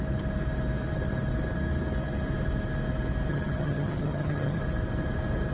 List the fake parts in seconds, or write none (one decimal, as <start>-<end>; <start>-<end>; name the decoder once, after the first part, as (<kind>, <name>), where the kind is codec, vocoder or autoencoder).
3.3-4.6 (vocoder, HiFi-GAN)